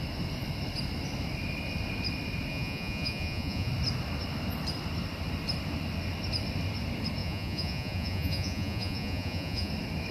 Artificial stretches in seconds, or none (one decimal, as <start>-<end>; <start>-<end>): 2.5-3.7; 7.2-9.7